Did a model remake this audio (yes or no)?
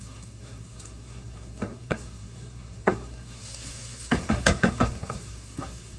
yes